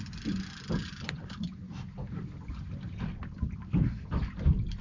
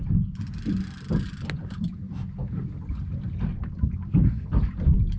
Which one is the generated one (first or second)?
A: first